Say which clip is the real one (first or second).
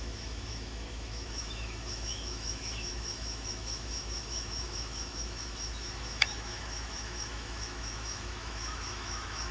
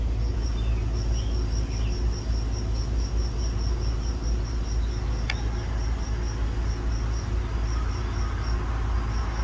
second